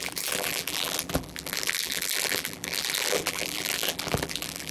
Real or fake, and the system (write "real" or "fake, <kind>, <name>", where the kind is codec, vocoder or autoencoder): fake, vocoder, BigVGAN v2